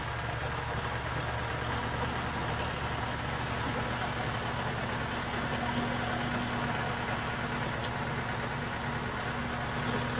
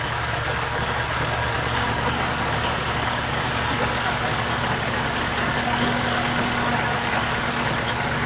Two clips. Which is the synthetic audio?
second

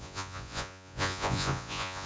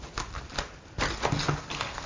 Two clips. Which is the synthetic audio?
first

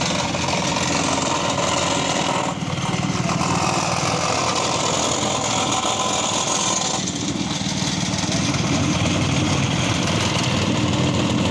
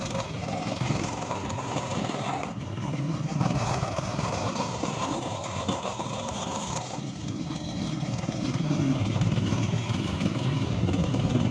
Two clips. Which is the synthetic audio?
second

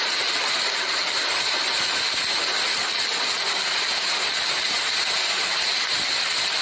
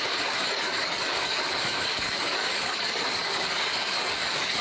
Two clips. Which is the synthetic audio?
second